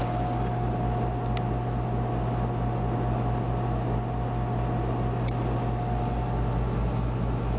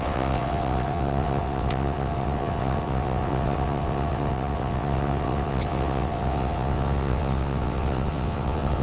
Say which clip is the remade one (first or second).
second